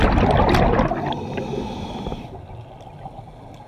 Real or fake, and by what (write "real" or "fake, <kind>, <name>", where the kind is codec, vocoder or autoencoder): real